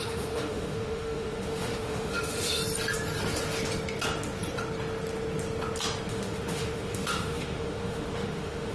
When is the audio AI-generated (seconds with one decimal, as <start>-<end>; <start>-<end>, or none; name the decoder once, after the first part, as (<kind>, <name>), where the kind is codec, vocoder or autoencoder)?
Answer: 0.0-2.6 (autoencoder, DAC-VAE); 6.1-8.7